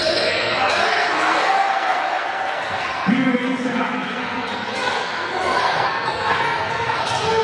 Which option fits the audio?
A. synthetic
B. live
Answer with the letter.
A